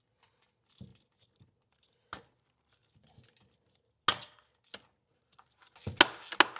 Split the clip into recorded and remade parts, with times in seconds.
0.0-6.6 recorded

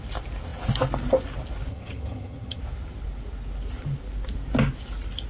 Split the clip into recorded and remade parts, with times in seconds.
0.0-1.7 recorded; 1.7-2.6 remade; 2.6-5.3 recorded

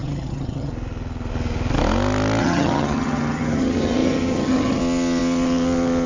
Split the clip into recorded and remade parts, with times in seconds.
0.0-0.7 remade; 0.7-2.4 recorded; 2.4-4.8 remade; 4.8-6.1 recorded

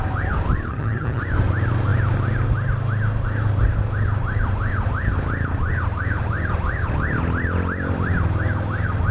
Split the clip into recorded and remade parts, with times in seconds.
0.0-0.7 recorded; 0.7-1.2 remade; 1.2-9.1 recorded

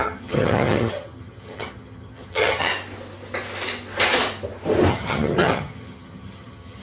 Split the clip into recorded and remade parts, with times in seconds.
0.0-2.7 remade; 2.7-4.9 recorded; 4.9-6.8 remade

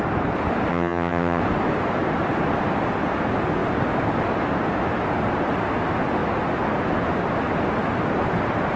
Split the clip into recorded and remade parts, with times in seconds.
0.0-0.7 recorded; 0.7-1.4 remade; 1.4-8.8 recorded